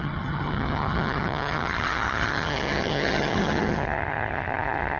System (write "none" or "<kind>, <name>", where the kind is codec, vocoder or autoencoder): vocoder, HiFi-GAN